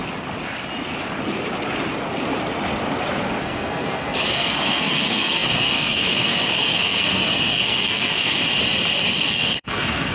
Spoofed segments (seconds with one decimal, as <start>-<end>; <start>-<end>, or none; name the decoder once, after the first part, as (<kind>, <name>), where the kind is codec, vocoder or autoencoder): 3.4-8.4 (codec, SNAC); 9.1-10.1